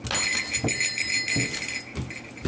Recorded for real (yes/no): yes